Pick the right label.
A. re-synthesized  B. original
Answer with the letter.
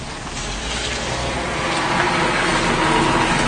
B